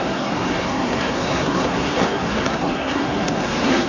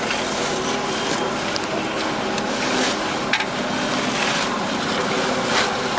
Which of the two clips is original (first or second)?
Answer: second